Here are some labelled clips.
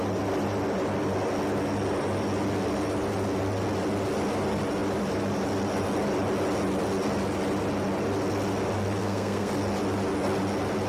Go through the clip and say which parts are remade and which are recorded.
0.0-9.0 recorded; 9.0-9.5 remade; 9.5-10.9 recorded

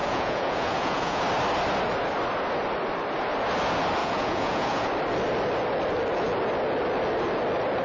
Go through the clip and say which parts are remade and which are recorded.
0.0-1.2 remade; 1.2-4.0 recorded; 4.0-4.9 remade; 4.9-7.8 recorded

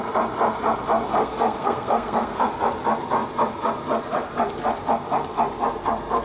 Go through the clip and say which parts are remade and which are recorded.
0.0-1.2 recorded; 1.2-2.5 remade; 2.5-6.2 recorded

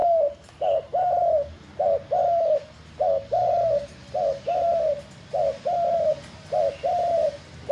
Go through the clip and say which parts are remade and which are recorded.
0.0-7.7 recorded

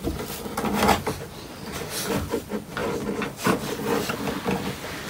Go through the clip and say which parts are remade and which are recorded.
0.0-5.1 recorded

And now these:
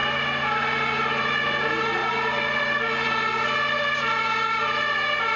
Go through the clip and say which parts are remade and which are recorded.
0.0-5.4 recorded

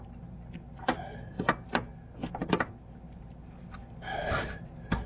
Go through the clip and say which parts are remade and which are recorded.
0.0-5.1 recorded

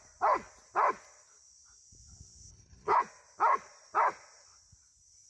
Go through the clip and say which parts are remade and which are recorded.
0.0-2.5 recorded; 2.5-3.0 remade; 3.0-5.3 recorded